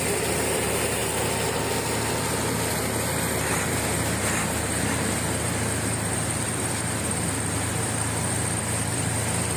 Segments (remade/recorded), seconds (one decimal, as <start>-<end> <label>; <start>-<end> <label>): 0.0-1.0 remade; 1.0-2.7 recorded; 2.7-9.6 remade